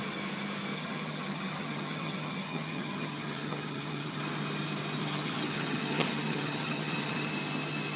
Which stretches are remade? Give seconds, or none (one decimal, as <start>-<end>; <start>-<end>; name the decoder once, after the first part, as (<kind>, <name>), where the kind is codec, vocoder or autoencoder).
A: 0.7-4.2 (vocoder, HiFi-GAN); 5.0-7.3